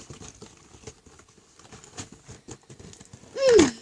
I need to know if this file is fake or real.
real